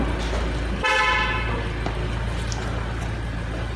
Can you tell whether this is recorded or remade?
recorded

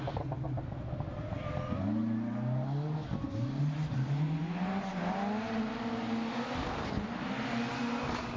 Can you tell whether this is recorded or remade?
recorded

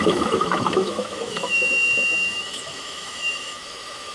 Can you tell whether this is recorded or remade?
remade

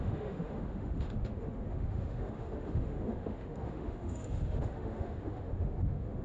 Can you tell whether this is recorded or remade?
remade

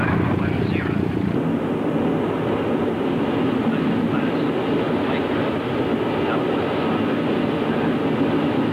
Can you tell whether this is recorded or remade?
recorded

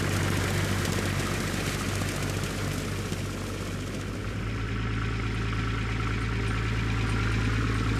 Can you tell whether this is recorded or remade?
recorded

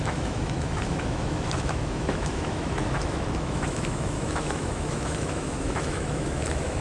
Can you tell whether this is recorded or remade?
remade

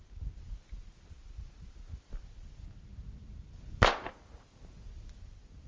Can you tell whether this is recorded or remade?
recorded